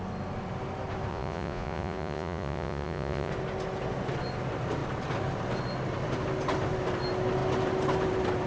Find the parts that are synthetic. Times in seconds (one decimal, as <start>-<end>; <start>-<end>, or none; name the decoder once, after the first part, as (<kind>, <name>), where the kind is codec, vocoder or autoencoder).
1.1-3.3 (vocoder, Vocos)